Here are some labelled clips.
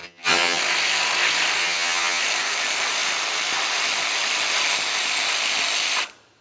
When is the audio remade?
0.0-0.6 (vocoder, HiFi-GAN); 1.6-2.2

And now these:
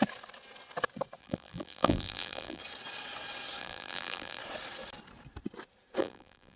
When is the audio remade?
1.2-2.6 (vocoder, BigVGAN v2); 3.6-4.4; 6.0-6.6

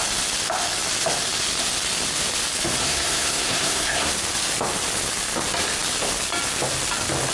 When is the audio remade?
2.8-4.1 (codec, SNAC)

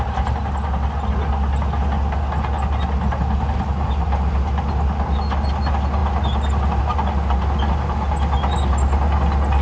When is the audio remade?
none